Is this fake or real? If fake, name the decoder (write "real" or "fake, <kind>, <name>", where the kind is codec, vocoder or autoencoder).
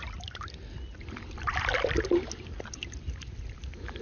real